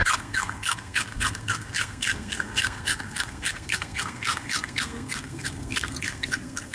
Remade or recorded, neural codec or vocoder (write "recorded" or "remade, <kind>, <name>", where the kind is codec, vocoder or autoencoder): remade, codec, SNAC